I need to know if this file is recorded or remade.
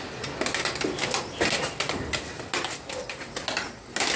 recorded